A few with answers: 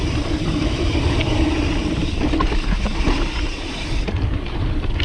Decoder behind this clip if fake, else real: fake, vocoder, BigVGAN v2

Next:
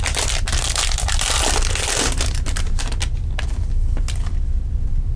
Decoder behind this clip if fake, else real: real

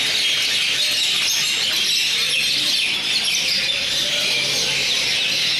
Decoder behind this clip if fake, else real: real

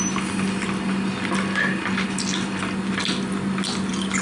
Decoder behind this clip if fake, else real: real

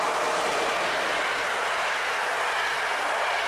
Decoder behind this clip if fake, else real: real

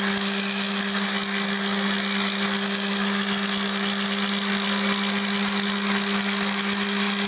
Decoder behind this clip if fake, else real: real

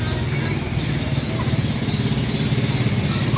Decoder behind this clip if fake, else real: real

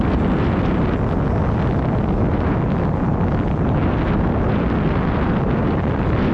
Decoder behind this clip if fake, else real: real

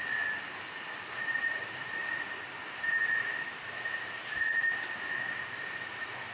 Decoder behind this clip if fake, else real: real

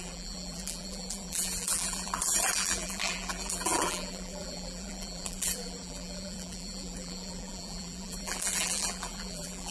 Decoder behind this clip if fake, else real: fake, vocoder, BigVGAN v2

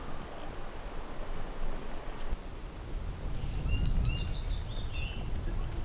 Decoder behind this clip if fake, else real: real